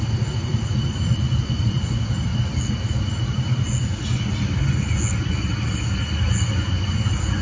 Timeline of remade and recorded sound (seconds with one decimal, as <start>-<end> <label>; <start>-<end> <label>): 0.0-2.3 remade; 2.3-6.7 recorded; 6.7-7.4 remade